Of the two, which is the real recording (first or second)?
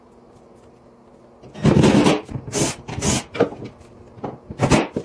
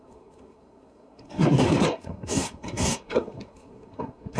first